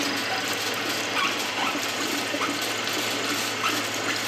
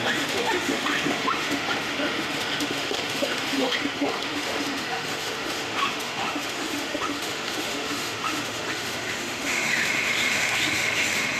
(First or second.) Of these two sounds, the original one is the first